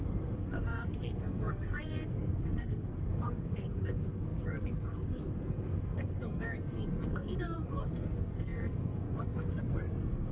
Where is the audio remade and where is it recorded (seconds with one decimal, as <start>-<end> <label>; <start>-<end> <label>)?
0.0-10.3 remade